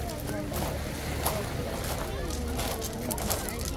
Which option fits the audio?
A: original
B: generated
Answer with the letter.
A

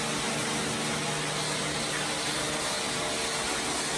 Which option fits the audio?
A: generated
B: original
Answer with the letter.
B